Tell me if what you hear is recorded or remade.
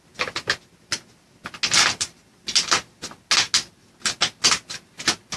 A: recorded